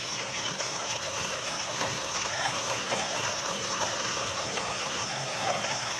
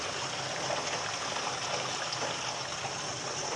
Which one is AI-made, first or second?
first